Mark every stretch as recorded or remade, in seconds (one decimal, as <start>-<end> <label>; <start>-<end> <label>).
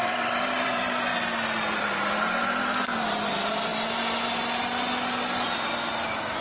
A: 0.0-1.1 remade; 1.1-1.8 recorded; 1.8-3.7 remade; 3.7-5.9 recorded; 5.9-6.4 remade